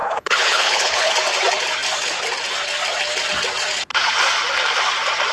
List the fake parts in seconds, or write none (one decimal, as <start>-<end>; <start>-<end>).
0.0-1.1